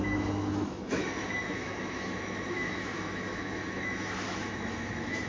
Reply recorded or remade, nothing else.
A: remade